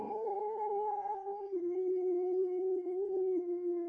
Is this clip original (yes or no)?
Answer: no